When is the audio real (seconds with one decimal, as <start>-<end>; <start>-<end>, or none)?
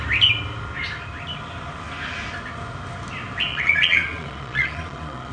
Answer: 0.0-3.5